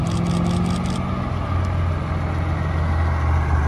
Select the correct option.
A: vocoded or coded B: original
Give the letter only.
B